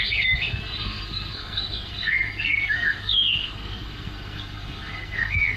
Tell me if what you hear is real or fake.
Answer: fake